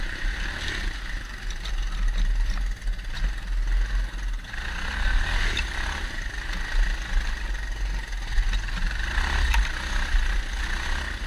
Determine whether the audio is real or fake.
real